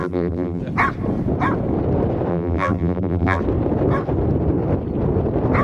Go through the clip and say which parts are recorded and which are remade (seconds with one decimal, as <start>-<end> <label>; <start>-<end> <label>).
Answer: 0.0-0.6 remade; 0.6-2.3 recorded; 2.3-3.4 remade; 3.4-5.6 recorded